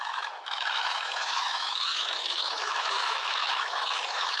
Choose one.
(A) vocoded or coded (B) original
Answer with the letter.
A